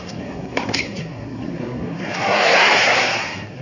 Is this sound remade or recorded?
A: remade